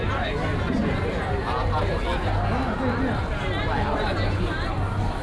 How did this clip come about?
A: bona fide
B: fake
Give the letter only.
A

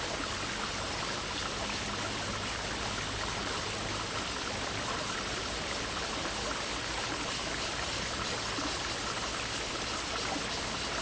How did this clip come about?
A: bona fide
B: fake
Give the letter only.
A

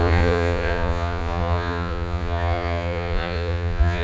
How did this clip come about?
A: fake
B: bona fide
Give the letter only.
A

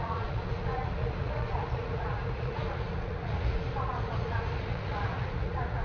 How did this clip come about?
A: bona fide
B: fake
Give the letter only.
B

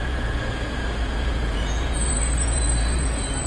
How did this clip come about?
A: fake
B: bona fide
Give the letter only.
A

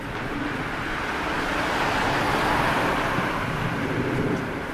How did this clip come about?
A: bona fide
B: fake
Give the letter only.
A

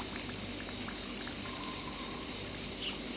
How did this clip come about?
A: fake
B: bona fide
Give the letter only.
B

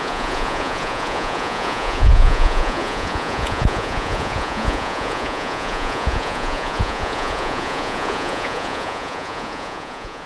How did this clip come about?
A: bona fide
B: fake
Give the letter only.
B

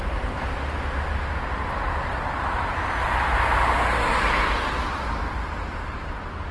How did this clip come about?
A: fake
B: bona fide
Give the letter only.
B